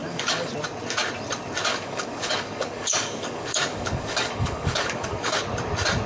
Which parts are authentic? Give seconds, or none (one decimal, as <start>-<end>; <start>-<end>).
0.5-1.7; 5.4-6.1